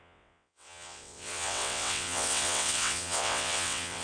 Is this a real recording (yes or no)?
no